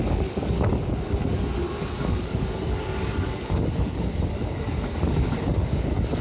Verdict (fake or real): fake